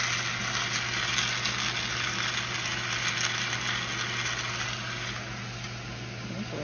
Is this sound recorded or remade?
recorded